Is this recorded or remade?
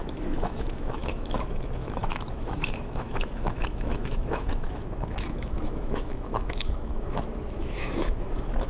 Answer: remade